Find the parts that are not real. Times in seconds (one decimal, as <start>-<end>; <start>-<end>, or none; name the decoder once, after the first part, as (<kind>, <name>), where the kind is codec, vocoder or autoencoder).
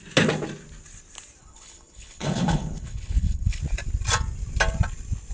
1.4-3.6 (codec, HILCodec)